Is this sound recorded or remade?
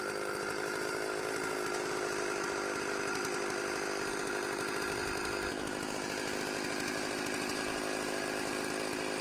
recorded